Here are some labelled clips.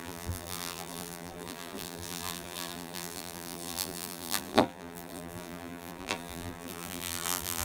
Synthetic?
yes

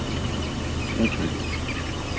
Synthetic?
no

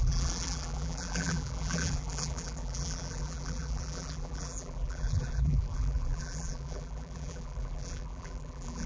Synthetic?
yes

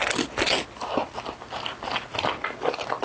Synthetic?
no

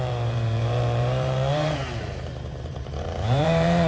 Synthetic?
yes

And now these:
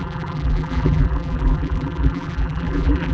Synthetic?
yes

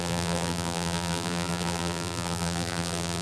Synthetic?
yes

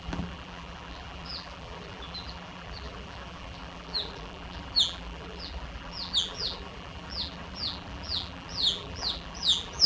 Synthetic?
yes